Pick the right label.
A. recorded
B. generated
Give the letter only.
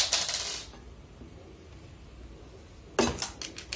A